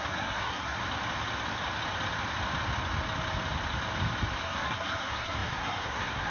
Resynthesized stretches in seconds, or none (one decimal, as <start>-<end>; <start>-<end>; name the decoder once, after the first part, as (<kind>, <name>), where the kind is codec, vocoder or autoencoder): 0.0-0.8 (codec, SNAC); 4.4-6.3